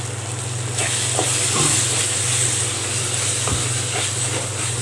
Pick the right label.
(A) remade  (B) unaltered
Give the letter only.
B